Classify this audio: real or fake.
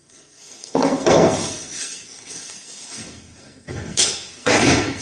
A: fake